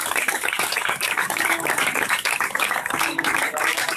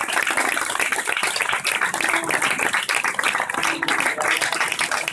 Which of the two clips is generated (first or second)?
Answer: first